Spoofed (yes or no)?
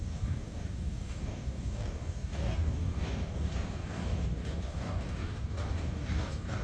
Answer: yes